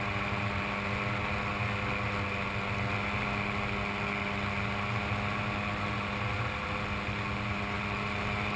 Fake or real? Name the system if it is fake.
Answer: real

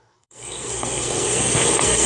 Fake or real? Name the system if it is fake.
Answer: fake, codec, SNAC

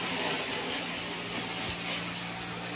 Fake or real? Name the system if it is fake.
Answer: real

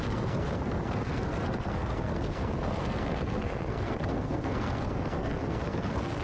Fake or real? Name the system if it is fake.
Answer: fake, codec, SNAC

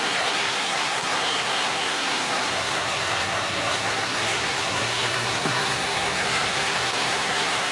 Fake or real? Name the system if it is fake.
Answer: fake, codec, SNAC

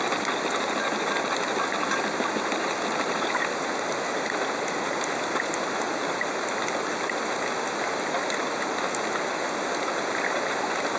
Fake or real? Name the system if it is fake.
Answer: real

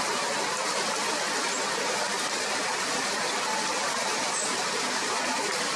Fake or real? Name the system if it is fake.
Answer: real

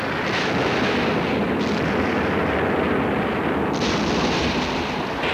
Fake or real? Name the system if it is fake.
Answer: real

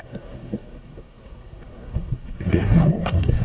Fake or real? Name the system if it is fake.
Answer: fake, codec, SNAC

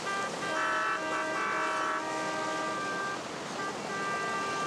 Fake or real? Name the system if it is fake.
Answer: real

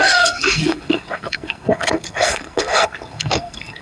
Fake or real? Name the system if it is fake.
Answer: fake, codec, SNAC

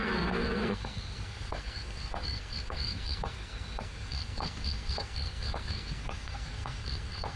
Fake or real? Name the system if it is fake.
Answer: fake, codec, SNAC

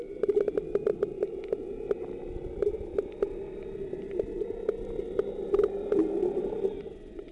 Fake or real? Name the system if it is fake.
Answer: real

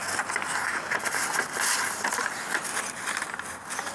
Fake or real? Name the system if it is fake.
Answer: real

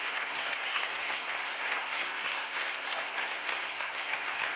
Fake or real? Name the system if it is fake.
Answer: fake, codec, SNAC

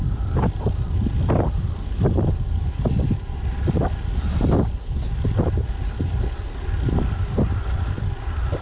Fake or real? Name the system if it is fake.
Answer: real